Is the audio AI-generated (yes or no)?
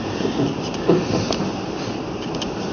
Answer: no